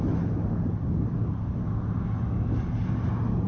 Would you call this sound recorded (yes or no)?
yes